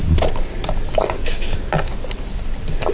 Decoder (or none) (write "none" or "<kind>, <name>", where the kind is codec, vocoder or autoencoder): none